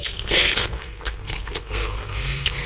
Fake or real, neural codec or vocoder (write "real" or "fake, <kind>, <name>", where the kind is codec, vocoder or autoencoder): fake, codec, SNAC